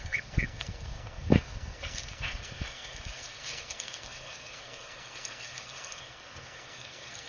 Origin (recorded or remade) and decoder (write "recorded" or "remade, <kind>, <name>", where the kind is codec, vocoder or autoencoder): remade, codec, SNAC